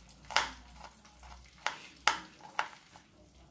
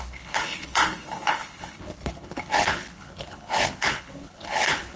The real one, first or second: first